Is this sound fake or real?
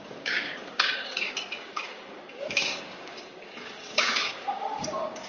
fake